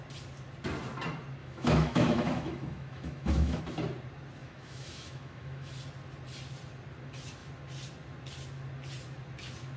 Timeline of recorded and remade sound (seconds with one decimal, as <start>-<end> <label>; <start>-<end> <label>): 0.0-1.4 recorded; 1.4-3.6 remade; 3.6-4.4 recorded; 4.4-5.7 remade; 5.7-9.8 recorded